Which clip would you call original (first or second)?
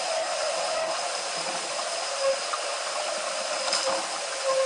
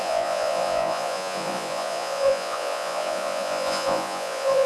first